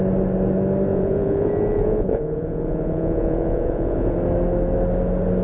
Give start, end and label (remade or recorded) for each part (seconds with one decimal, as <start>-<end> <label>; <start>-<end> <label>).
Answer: 0.0-0.9 recorded; 0.9-4.1 remade; 4.1-5.4 recorded